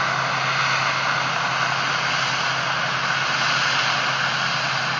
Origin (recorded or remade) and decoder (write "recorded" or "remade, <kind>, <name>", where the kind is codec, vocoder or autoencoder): recorded